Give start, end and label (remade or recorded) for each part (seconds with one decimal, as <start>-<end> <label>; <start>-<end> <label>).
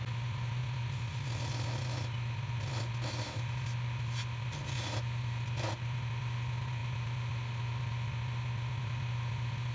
0.0-9.7 recorded